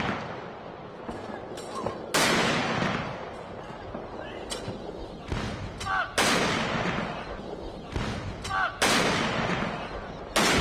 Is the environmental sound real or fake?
real